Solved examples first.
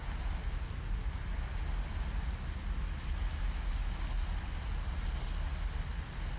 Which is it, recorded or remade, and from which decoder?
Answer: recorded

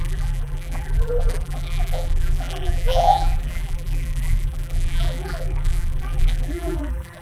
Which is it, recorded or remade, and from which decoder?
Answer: remade, vocoder, BigVGAN v2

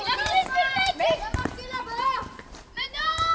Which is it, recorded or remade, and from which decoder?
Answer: remade, vocoder, BigVGAN v2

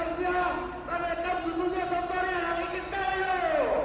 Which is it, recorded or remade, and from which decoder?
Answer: recorded